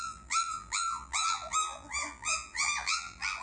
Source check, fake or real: fake